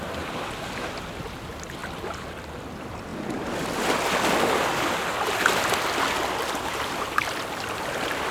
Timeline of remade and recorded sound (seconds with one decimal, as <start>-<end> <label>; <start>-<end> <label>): 0.0-8.3 recorded